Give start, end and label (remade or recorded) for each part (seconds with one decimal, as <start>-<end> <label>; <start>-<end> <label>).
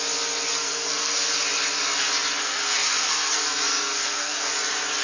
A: 0.0-0.5 recorded; 0.5-1.3 remade; 1.3-2.4 recorded; 2.4-4.5 remade; 4.5-5.0 recorded